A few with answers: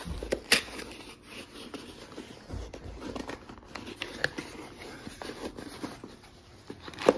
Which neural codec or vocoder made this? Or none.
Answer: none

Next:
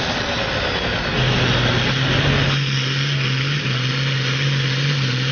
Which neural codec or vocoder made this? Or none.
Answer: none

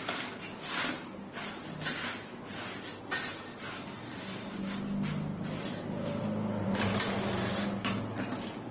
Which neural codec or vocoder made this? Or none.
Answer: none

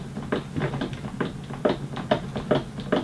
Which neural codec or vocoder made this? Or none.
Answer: none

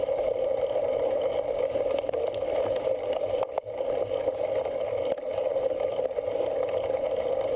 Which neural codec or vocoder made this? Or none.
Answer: none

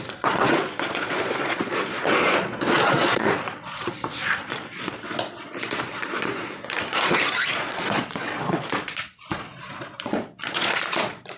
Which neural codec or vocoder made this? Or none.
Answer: vocoder, Vocos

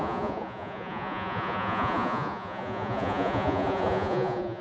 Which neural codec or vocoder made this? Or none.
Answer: vocoder, Vocos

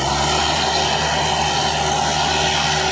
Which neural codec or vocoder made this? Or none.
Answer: none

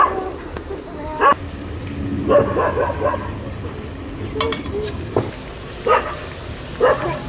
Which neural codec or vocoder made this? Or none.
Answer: none